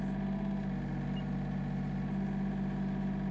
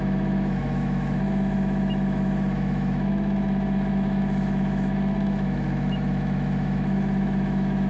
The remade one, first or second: second